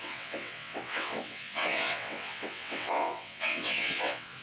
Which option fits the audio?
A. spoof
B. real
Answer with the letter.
A